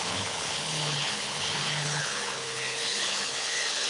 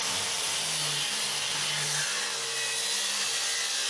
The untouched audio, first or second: second